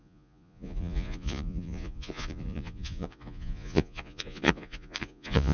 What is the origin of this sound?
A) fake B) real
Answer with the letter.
A